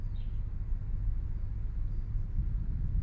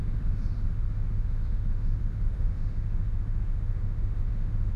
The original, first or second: first